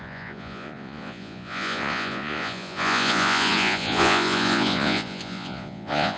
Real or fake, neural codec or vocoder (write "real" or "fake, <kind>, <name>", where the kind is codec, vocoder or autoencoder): fake, vocoder, Vocos